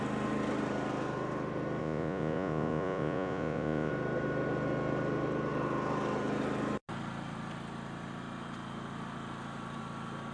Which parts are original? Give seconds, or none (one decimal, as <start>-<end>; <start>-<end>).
0.0-1.8; 3.9-10.3